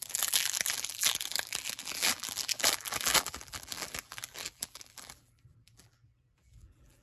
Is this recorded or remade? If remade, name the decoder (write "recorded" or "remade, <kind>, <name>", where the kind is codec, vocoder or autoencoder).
remade, vocoder, BigVGAN v2